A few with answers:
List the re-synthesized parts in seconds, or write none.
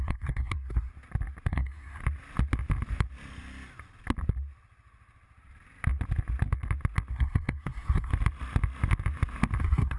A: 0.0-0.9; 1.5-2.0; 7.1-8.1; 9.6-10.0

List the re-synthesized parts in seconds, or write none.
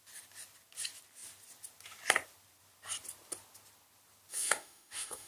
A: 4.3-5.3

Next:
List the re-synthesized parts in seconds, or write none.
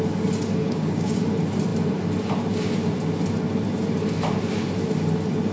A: 0.6-1.2